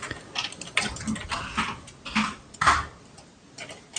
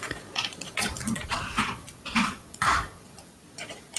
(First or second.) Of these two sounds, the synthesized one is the second